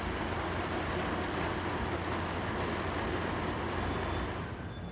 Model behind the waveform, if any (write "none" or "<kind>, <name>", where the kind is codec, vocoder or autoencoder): none